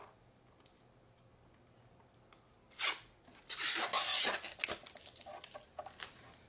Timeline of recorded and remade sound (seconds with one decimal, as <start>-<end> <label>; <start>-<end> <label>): 0.0-6.5 recorded